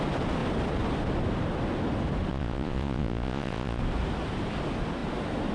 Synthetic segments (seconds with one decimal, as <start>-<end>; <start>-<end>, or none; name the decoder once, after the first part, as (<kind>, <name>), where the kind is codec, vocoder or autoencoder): 2.3-3.8 (vocoder, Vocos)